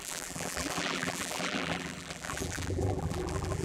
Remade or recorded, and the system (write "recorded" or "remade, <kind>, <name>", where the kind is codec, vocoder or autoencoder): remade, vocoder, BigVGAN v2